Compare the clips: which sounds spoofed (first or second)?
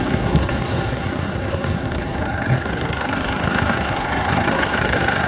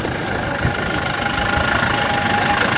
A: first